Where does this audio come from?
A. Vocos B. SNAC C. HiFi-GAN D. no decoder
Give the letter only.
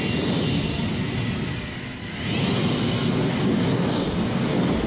D